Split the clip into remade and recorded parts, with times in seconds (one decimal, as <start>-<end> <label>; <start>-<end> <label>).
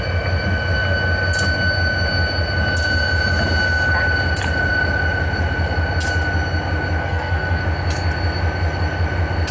0.0-7.0 recorded; 7.0-7.6 remade; 7.6-9.5 recorded